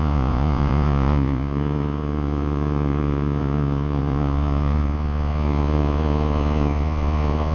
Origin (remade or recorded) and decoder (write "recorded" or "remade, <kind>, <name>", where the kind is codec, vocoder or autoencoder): remade, vocoder, Vocos